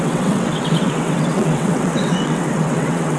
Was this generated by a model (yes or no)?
yes